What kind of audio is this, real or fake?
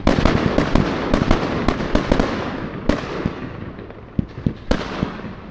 real